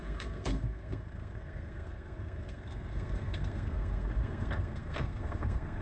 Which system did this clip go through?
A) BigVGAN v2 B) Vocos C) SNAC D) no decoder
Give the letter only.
C